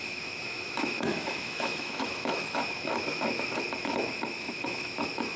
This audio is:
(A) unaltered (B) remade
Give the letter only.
B